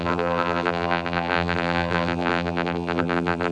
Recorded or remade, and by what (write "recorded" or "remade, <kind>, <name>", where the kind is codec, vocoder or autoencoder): remade, vocoder, BigVGAN v2